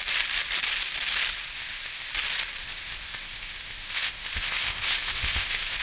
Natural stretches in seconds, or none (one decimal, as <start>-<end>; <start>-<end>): 0.0-1.5; 2.1-2.6